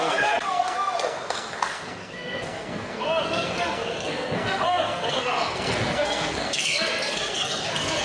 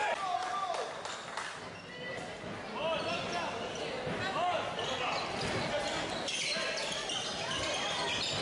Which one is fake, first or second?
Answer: first